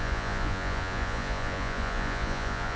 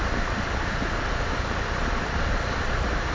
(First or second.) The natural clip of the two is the second